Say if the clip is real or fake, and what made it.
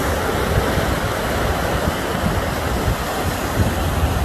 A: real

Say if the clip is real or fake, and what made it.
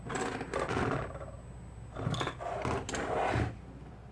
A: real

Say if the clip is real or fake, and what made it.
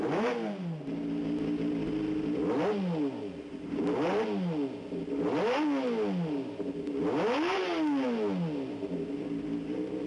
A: real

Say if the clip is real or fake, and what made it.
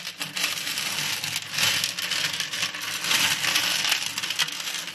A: real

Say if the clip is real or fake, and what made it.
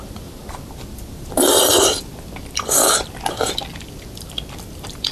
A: real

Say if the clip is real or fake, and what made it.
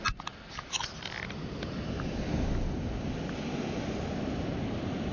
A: real